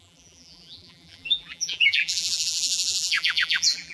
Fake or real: fake